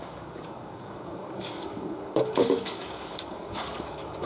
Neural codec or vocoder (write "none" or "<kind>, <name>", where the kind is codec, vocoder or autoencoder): codec, DAC